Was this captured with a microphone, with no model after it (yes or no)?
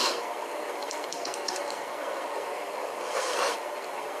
no